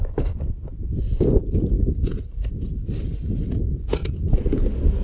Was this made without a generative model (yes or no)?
yes